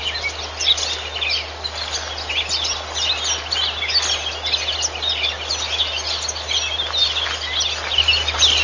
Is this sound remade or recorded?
recorded